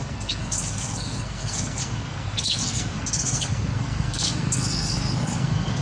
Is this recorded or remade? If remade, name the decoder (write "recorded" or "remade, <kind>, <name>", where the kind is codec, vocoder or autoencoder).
remade, codec, SNAC